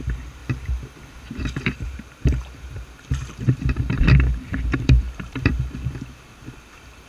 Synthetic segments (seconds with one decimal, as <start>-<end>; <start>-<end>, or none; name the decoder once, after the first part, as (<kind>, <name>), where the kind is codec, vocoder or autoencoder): 0.0-0.4 (vocoder, BigVGAN v2); 1.3-7.1